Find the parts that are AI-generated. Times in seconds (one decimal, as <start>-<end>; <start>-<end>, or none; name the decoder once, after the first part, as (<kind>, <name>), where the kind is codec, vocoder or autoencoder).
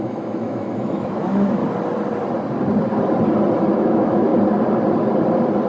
0.0-1.6 (autoencoder, DAC-VAE); 3.7-4.3